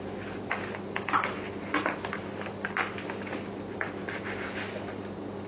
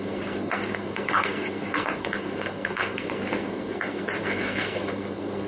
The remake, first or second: second